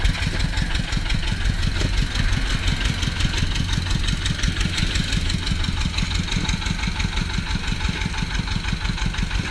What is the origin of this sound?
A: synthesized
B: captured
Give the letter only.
B